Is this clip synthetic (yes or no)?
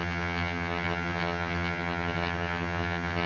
yes